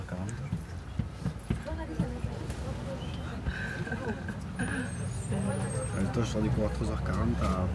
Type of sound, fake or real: real